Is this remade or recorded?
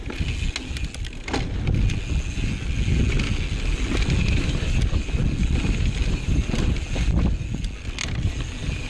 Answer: recorded